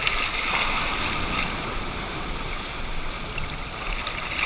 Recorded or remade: recorded